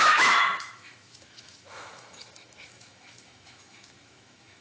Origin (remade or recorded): remade